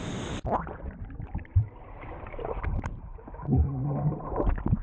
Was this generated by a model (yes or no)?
yes